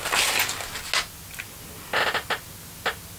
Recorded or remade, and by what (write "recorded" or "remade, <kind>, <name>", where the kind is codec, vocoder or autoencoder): recorded